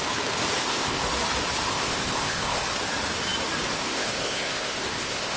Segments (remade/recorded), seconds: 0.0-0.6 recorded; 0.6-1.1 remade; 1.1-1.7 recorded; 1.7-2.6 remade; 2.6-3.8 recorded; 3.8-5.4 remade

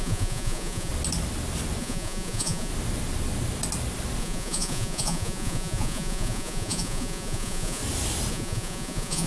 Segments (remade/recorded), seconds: 0.0-0.9 remade; 0.9-1.8 recorded; 1.8-2.7 remade; 2.7-4.2 recorded; 4.2-7.8 remade; 7.8-8.3 recorded; 8.3-9.3 remade

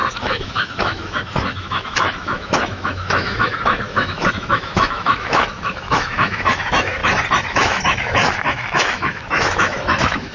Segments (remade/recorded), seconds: 0.0-7.0 remade; 7.0-7.5 recorded; 7.5-10.3 remade

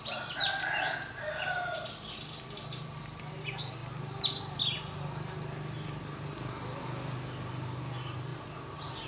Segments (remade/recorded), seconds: 0.0-9.1 recorded

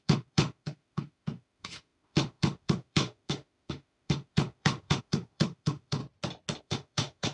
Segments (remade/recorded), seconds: 0.0-6.0 remade; 6.0-6.6 recorded; 6.6-7.3 remade

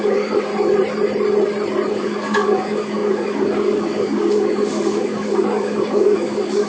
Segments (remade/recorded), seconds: 0.0-0.5 remade; 0.5-1.9 recorded; 1.9-6.7 remade

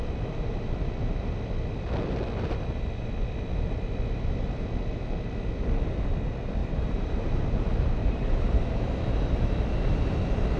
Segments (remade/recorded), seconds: 0.0-6.6 recorded; 6.6-7.3 remade; 7.3-8.0 recorded; 8.0-8.8 remade; 8.8-10.6 recorded